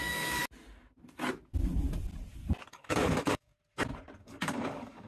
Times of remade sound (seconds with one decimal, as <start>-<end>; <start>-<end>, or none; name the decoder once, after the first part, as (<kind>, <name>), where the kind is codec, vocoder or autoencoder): 0.0-0.4 (codec, DAC); 2.7-3.5; 4.2-5.1